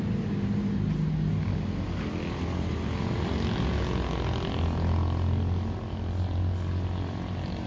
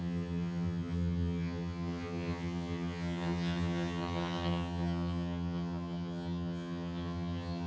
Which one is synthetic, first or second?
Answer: second